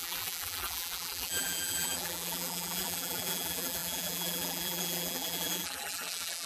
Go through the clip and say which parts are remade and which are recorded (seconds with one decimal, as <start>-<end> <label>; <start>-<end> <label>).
0.0-6.5 remade